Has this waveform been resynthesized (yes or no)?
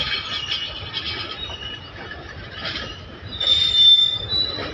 no